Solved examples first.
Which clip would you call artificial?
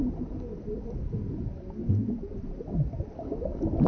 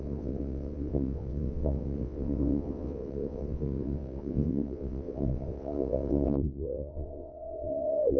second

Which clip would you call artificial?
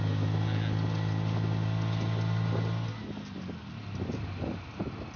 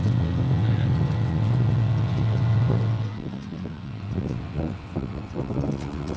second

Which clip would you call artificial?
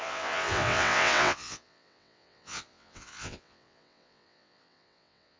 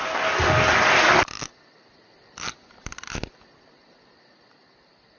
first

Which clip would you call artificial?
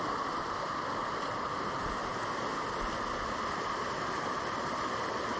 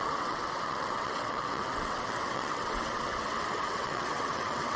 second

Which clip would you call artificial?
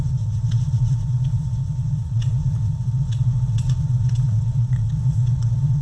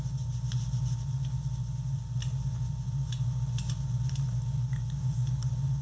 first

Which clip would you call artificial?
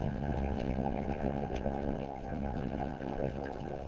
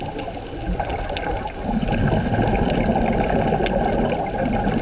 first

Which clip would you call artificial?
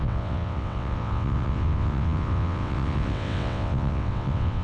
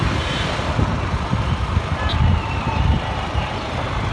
first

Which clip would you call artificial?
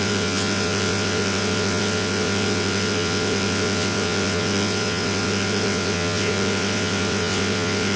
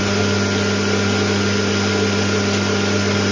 first